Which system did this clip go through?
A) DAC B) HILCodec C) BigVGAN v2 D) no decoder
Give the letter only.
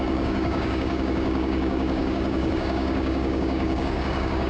A